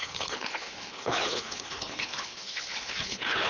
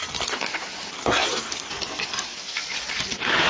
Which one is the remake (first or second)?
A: first